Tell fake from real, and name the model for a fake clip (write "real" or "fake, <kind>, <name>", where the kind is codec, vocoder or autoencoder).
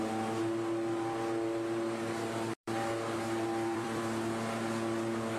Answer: fake, vocoder, BigVGAN v2